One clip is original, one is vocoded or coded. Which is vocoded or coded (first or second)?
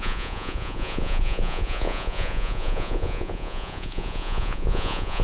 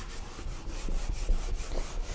first